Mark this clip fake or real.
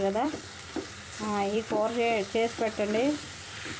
fake